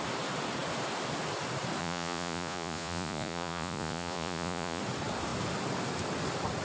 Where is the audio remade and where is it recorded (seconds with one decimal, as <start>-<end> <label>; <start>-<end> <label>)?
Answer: 0.0-1.8 recorded; 1.8-4.8 remade; 4.8-6.6 recorded